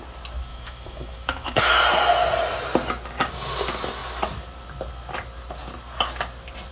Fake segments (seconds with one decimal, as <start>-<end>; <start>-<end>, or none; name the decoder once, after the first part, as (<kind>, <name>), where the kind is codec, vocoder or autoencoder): 0.5-1.6 (autoencoder, DAC-VAE)